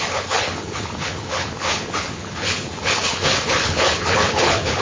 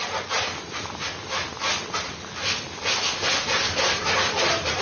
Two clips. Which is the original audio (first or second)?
second